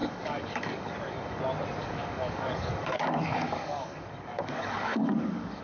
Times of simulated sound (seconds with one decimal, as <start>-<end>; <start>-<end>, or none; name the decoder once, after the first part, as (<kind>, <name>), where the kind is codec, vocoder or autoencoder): 0.0-1.4 (codec, DAC); 1.8-5.6